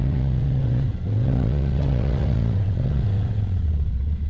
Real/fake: fake